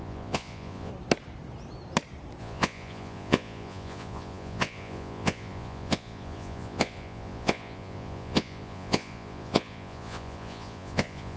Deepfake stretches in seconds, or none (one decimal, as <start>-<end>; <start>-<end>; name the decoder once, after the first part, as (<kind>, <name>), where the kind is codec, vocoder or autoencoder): 0.0-0.9 (vocoder, Vocos); 2.4-11.4